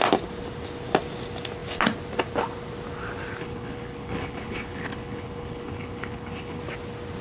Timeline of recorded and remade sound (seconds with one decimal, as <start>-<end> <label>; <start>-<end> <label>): 0.0-3.4 recorded; 3.4-6.6 remade; 6.6-7.2 recorded

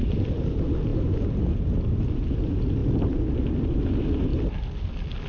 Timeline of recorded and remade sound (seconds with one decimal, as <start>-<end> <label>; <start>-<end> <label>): 0.0-5.3 recorded

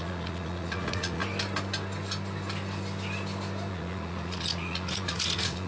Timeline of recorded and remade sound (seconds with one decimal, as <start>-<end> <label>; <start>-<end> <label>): 0.0-1.2 remade; 1.2-3.7 recorded; 3.7-5.7 remade

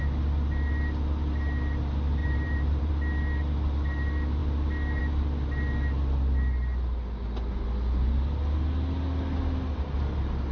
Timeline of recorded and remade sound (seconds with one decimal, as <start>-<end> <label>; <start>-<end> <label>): 0.0-2.2 recorded; 2.2-2.9 remade; 2.9-10.5 recorded

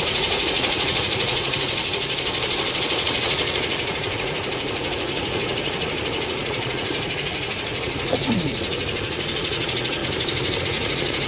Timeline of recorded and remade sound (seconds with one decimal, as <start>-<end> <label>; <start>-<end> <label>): 0.0-2.0 remade; 2.0-2.8 recorded; 2.8-10.0 remade; 10.0-10.6 recorded; 10.6-11.3 remade

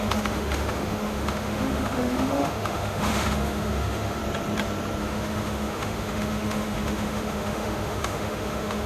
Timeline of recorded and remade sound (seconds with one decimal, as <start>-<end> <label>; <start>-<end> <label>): 0.0-4.2 remade; 4.2-5.0 recorded; 5.0-8.9 remade